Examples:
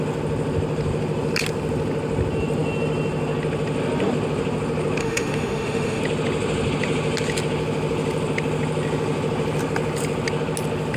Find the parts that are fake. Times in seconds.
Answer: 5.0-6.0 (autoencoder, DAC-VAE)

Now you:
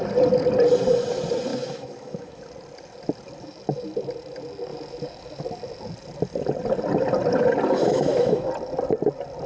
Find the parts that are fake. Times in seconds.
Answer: 1.5-2.4 (autoencoder, DAC-VAE); 7.8-8.5